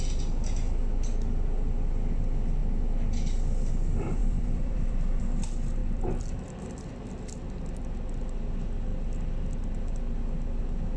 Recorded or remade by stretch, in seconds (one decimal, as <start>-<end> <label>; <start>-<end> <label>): 0.0-4.2 recorded; 4.2-5.2 remade; 5.2-5.8 recorded; 5.8-6.6 remade; 6.6-11.0 recorded